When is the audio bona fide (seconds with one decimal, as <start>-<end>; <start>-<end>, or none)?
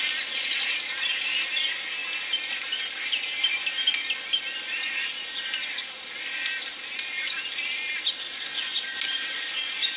0.0-10.0